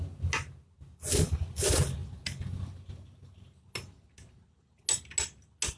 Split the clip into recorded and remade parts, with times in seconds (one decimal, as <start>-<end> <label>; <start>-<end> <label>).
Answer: 0.0-5.8 recorded